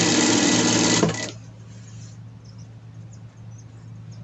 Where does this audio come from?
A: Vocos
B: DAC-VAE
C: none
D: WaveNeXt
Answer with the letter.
C